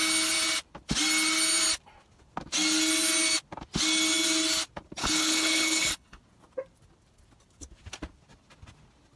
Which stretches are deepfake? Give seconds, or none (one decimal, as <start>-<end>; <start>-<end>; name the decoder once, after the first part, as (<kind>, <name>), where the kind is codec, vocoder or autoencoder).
5.0-6.2 (codec, HILCodec)